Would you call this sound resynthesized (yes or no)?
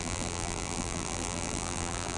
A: yes